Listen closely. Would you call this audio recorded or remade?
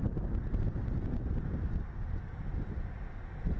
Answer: recorded